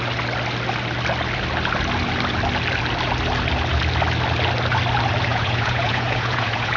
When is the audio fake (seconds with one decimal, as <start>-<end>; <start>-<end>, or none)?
5.3-6.8